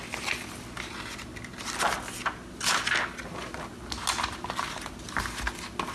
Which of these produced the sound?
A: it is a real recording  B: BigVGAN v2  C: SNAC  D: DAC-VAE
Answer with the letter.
A